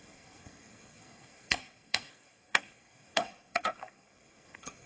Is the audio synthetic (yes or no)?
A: yes